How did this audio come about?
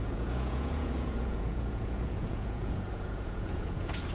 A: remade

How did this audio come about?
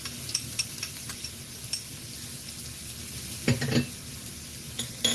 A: recorded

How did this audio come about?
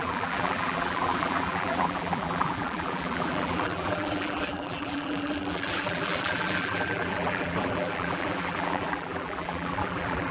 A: remade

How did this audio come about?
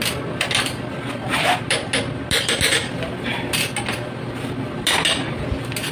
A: recorded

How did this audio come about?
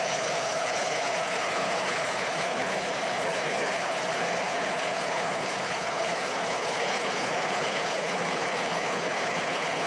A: remade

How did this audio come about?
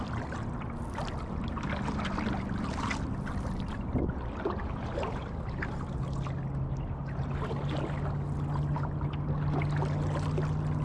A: recorded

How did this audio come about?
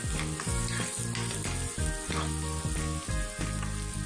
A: recorded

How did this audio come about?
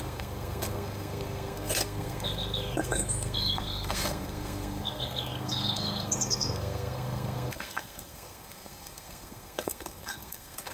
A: remade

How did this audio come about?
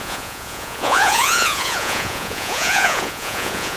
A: remade